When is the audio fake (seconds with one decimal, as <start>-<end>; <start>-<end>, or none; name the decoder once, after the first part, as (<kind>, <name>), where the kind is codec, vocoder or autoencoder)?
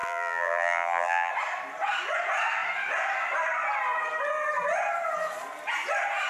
0.0-1.3 (vocoder, BigVGAN v2)